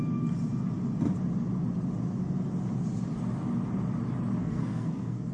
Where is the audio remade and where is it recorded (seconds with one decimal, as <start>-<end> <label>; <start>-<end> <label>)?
0.0-4.4 recorded; 4.4-5.3 remade